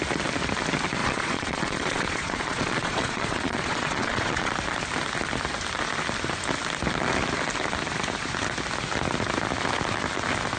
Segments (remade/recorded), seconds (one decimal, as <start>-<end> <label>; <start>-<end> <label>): 0.0-1.0 recorded; 1.0-4.5 remade; 4.5-10.6 recorded